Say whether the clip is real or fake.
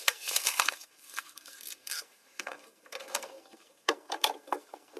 fake